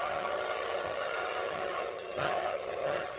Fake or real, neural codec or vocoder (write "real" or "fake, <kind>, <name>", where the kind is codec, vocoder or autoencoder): fake, vocoder, HiFi-GAN